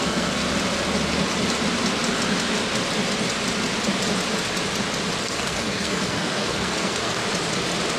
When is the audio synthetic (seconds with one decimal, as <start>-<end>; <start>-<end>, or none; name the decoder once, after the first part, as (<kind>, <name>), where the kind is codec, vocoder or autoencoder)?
0.0-0.4 (codec, SNAC); 5.2-7.2